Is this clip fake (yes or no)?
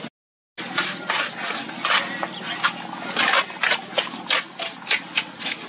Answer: no